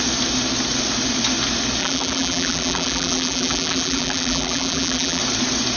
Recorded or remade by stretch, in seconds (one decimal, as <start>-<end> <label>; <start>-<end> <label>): 0.0-1.8 recorded; 1.8-5.2 remade; 5.2-5.8 recorded